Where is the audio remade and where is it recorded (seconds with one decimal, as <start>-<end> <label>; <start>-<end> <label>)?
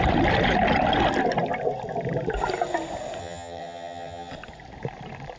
0.0-3.2 recorded; 3.2-4.3 remade; 4.3-5.4 recorded